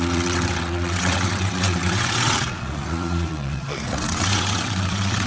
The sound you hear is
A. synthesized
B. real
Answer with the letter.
A